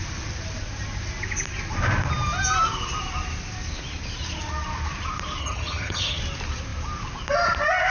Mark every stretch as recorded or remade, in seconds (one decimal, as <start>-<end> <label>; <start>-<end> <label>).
0.0-5.4 recorded; 5.4-6.2 remade; 6.2-7.9 recorded